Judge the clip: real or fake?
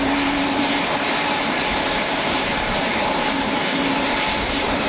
fake